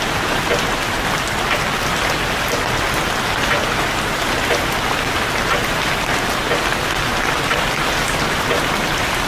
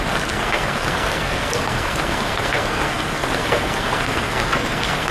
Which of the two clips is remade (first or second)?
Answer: second